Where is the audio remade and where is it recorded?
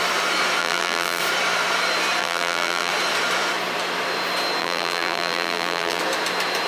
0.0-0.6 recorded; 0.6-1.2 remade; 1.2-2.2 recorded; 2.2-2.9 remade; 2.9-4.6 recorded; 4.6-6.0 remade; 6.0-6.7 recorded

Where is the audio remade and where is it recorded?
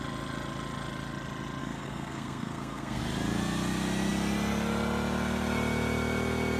0.0-1.6 recorded; 1.6-3.0 remade; 3.0-6.6 recorded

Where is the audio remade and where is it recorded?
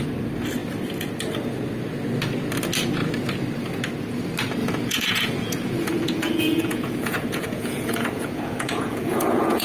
0.0-4.6 recorded; 4.6-9.6 remade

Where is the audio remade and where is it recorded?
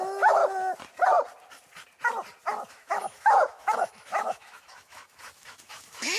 0.0-0.4 remade; 0.4-2.7 recorded; 2.7-6.2 remade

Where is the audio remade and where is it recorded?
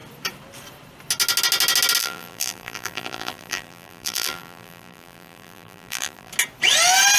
0.0-2.0 recorded; 2.0-6.3 remade; 6.3-7.2 recorded